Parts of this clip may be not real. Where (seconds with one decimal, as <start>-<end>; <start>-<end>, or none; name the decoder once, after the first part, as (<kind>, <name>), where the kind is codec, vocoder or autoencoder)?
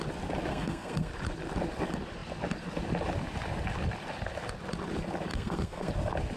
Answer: 0.5-1.1 (codec, SNAC); 5.3-5.9